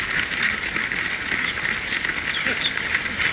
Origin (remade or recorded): recorded